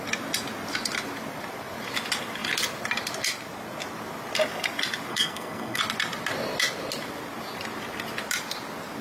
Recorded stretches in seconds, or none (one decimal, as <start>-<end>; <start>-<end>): 0.0-5.1; 5.8-9.0